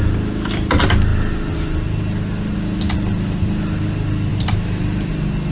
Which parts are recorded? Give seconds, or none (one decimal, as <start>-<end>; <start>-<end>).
0.0-5.5